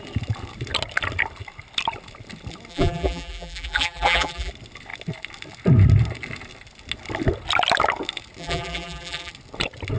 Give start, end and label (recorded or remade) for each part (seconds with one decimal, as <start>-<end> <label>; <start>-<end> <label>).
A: 0.0-2.7 recorded; 2.7-4.5 remade; 4.5-8.4 recorded; 8.4-9.3 remade; 9.3-10.0 recorded

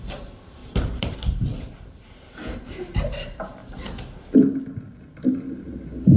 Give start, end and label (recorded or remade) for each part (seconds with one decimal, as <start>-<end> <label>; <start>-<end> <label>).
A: 0.0-3.6 remade; 3.6-5.6 recorded; 5.6-6.2 remade

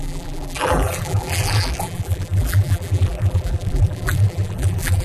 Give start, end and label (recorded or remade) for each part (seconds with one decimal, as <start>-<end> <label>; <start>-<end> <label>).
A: 0.0-5.0 remade

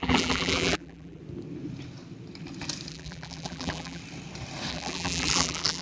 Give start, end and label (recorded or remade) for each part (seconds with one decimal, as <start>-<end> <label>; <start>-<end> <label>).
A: 0.0-1.2 remade; 1.2-2.9 recorded; 2.9-4.0 remade; 4.0-4.7 recorded; 4.7-5.8 remade

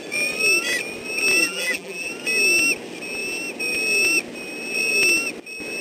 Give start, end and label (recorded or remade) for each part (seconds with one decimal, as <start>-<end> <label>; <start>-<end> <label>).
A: 0.0-1.4 recorded; 1.4-2.1 remade; 2.1-5.8 recorded

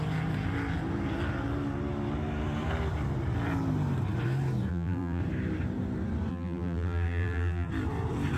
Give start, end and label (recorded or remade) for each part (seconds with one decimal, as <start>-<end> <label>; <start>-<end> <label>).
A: 0.0-4.7 recorded; 4.7-5.2 remade; 5.2-6.3 recorded; 6.3-7.7 remade; 7.7-8.4 recorded